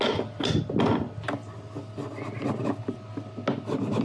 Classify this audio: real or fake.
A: real